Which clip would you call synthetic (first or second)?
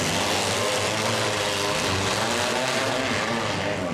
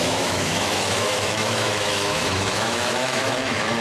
second